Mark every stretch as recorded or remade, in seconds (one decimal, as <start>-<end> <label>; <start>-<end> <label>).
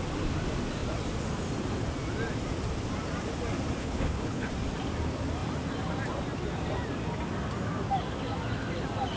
0.0-3.8 recorded; 3.8-4.5 remade; 4.5-9.2 recorded